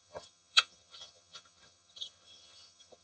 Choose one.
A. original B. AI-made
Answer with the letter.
B